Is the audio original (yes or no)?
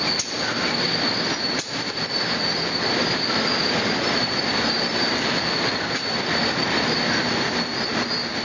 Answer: yes